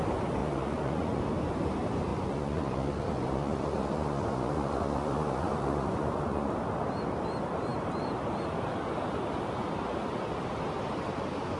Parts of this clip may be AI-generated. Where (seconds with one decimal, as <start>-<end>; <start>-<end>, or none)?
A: 0.4-1.2; 2.1-6.5

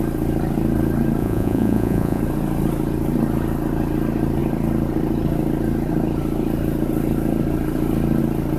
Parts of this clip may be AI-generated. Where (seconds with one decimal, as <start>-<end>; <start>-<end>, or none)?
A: 1.2-2.2

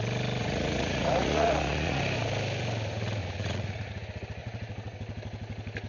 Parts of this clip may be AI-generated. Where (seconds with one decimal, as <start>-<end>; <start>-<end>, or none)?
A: 0.4-2.0; 3.2-3.9; 4.4-5.0

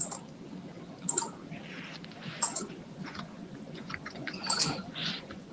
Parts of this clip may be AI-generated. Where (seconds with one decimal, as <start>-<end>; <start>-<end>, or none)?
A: 2.2-5.5

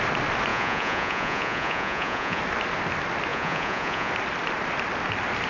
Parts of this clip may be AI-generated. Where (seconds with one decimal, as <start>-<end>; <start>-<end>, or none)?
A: 0.5-2.4; 3.3-4.1